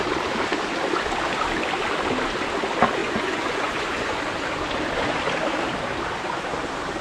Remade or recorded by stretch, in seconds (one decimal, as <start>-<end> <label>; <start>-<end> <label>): 0.0-3.0 recorded; 3.0-4.2 remade; 4.2-7.0 recorded